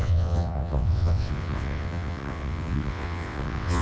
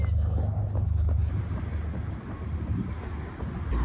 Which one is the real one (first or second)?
second